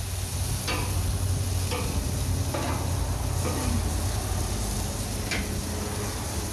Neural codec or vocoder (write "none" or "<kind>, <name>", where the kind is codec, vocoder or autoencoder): none